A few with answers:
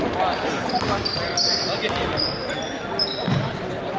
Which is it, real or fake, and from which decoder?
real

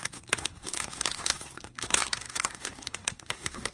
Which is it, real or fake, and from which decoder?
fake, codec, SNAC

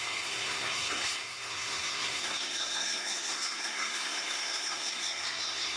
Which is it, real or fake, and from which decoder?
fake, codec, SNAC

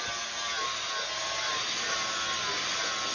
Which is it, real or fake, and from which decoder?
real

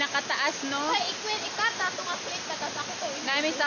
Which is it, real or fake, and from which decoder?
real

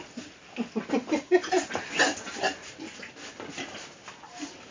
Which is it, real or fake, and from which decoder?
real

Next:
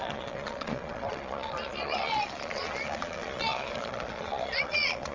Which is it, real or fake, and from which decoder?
fake, vocoder, Vocos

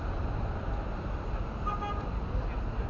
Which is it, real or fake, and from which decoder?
real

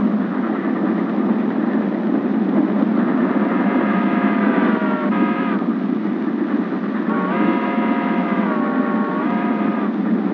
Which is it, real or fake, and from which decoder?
real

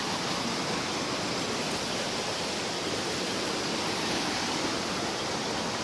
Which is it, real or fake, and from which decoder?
real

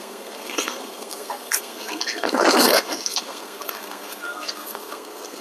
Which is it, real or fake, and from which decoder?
fake, codec, SNAC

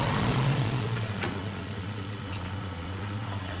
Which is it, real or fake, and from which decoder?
fake, vocoder, Vocos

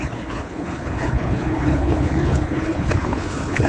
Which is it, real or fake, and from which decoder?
fake, codec, HILCodec